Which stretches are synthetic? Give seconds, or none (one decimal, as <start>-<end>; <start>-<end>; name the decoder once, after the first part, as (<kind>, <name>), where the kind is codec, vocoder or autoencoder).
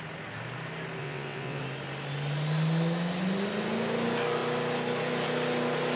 1.0-1.6 (vocoder, WaveNeXt)